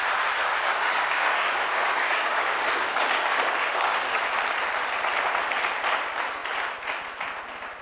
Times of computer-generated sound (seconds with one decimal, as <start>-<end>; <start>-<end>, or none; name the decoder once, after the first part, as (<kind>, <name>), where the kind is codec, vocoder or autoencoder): 0.4-4.2 (codec, DAC)